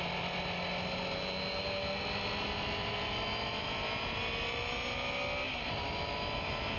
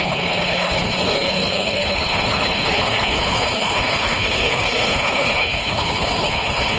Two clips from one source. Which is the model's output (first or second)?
second